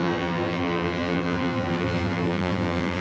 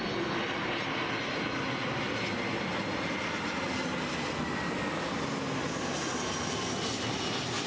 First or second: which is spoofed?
first